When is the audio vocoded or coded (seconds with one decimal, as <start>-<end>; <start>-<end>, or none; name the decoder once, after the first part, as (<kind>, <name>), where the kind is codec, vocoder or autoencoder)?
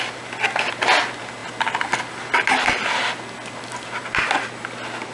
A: none